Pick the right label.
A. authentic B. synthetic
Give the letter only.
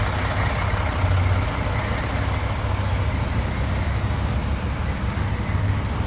A